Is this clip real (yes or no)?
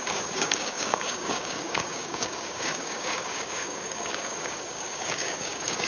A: no